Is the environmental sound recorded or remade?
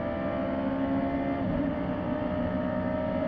recorded